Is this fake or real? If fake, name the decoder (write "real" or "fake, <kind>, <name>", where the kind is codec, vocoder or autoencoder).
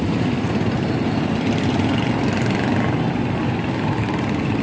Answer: real